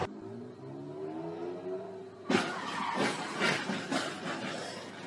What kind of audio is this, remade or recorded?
recorded